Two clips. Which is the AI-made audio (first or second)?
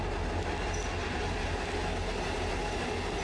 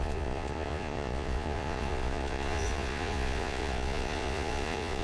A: second